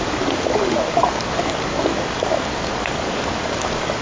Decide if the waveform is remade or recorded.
remade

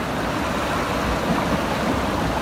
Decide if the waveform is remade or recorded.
recorded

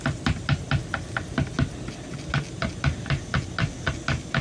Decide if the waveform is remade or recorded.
recorded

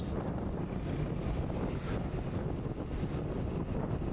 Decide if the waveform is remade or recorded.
recorded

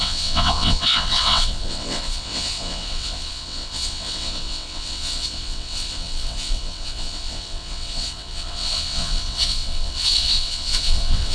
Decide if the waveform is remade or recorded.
remade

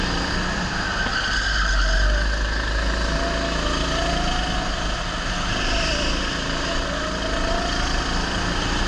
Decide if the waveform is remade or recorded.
recorded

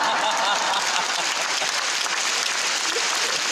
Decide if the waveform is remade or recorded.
recorded